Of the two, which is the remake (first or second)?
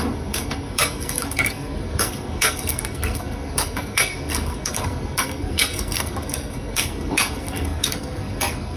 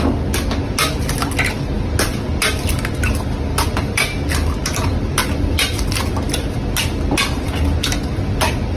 first